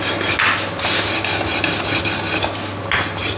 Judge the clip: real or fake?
real